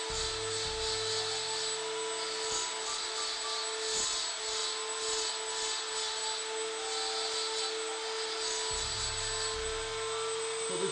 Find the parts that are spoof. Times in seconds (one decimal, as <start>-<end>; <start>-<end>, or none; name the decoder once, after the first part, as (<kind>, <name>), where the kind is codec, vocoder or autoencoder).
none